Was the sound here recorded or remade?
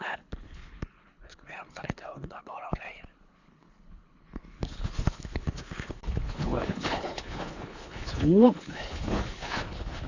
remade